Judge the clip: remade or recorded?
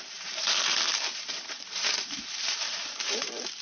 remade